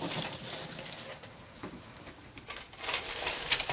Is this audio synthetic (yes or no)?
yes